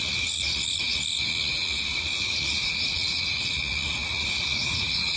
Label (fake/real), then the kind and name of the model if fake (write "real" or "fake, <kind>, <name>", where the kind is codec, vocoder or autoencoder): fake, vocoder, Vocos